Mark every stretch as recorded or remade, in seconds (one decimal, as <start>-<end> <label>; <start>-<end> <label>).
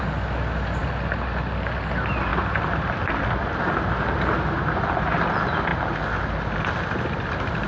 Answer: 0.0-7.7 recorded